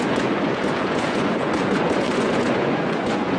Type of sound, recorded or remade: remade